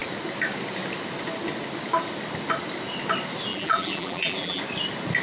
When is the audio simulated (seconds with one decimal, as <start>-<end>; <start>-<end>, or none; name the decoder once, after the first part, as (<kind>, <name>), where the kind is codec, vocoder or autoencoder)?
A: 3.5-4.6 (vocoder, BigVGAN v2)